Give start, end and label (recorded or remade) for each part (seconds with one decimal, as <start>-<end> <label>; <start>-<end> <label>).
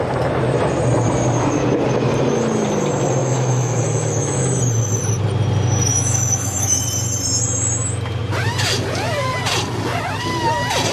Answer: 0.0-3.2 recorded; 3.2-4.6 remade; 4.6-5.9 recorded; 5.9-6.8 remade; 6.8-10.9 recorded